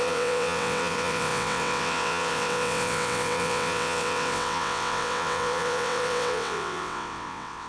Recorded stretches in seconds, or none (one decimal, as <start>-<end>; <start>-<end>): none

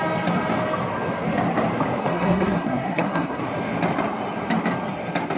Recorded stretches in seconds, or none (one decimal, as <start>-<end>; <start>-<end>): 0.0-2.0; 3.4-5.4

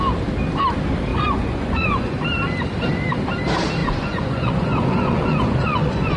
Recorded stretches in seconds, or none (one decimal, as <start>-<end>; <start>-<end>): 0.0-1.1; 2.2-3.8

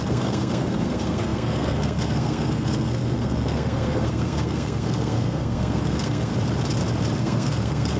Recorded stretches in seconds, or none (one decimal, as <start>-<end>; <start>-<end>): 6.3-7.2

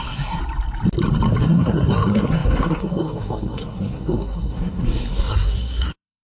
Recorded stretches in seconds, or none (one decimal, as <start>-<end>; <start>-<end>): 0.4-1.4

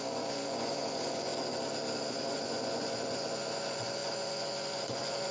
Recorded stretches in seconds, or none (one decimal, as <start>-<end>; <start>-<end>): 1.3-2.1